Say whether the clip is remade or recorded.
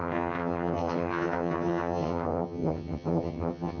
remade